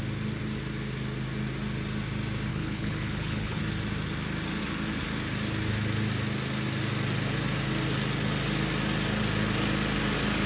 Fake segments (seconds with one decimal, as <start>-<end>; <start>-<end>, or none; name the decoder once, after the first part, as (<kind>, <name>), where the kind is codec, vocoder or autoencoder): 2.5-3.6 (codec, HILCodec)